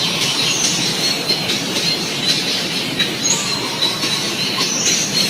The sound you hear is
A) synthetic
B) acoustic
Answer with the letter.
A